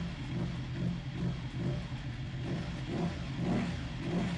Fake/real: real